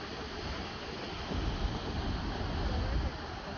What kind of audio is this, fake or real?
real